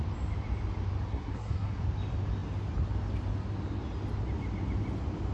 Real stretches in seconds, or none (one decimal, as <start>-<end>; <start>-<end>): 0.0-1.1; 1.8-5.3